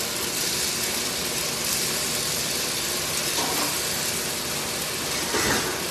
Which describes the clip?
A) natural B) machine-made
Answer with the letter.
A